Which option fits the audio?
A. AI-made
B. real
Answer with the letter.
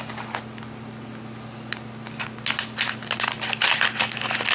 B